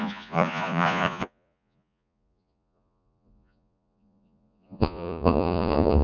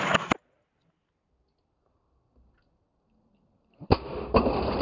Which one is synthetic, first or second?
first